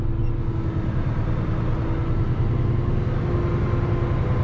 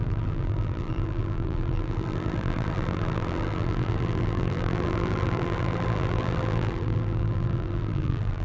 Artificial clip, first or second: second